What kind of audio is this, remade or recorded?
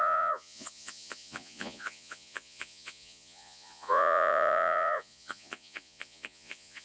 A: remade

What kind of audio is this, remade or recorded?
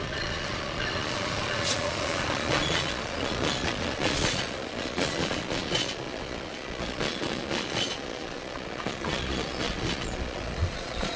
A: remade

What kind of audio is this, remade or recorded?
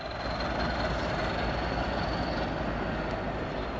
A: recorded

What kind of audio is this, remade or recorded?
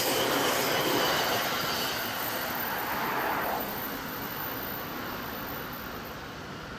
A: recorded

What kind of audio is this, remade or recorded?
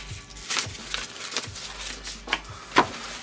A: recorded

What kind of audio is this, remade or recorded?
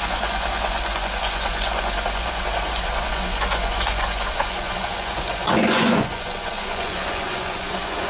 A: remade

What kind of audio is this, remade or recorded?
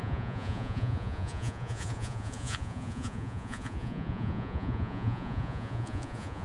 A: remade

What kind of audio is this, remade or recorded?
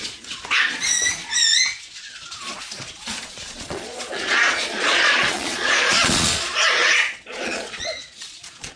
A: remade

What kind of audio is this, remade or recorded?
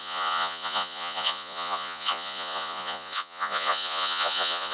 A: remade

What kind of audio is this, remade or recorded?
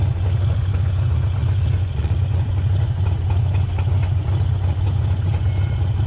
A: remade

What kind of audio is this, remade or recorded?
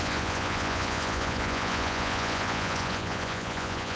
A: remade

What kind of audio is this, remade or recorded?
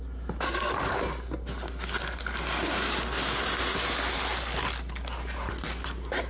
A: recorded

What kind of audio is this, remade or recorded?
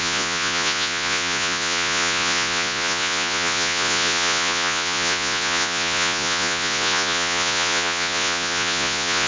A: remade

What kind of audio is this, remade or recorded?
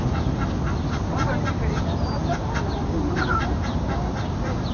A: recorded